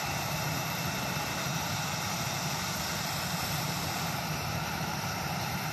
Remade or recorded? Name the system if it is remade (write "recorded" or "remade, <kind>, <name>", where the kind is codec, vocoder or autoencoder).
remade, vocoder, BigVGAN v2